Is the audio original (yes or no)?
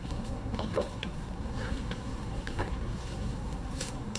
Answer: no